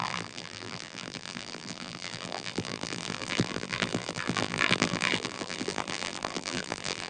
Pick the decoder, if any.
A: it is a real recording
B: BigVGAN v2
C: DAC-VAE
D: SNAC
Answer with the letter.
B